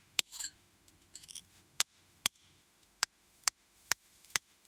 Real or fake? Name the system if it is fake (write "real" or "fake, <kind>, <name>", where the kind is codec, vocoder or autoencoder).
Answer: fake, autoencoder, DAC-VAE